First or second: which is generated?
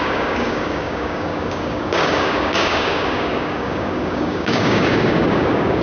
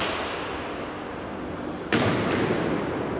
first